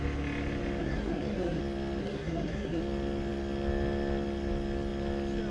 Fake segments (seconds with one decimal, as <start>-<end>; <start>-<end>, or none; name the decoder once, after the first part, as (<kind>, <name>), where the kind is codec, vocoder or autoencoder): 0.8-1.6 (codec, SNAC); 2.0-2.8